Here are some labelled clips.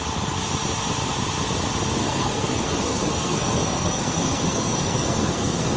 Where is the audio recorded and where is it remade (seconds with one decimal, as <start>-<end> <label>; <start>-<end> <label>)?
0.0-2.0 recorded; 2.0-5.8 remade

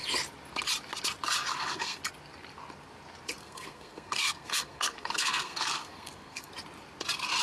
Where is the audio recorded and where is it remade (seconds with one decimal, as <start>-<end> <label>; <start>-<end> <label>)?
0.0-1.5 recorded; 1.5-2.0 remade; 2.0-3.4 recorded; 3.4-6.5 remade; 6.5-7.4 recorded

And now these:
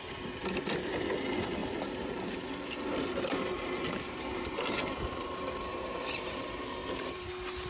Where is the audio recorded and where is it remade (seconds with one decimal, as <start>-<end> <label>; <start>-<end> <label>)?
0.0-1.6 recorded; 1.6-6.2 remade; 6.2-6.8 recorded; 6.8-7.3 remade; 7.3-7.7 recorded

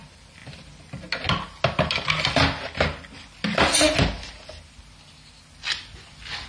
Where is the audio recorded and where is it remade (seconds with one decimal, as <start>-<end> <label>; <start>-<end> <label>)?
0.0-6.5 recorded